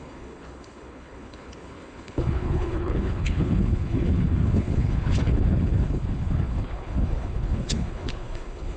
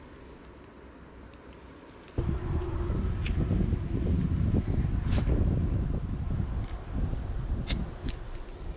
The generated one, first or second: first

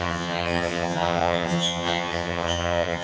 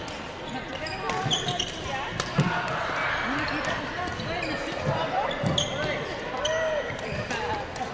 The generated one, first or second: first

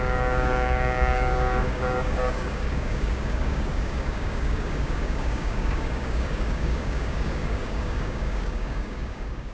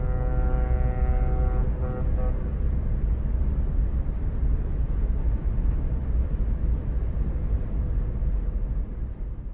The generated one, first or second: first